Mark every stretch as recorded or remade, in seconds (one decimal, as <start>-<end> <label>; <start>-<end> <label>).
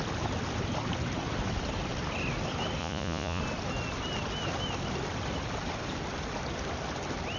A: 0.0-2.8 recorded; 2.8-3.4 remade; 3.4-7.4 recorded